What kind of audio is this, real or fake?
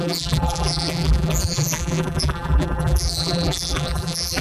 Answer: fake